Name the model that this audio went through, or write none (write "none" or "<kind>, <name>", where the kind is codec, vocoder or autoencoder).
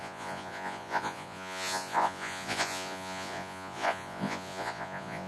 vocoder, Vocos